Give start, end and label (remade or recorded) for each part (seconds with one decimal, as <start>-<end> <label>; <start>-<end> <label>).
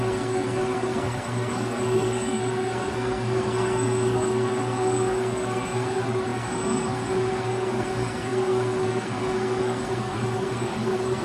0.0-11.2 remade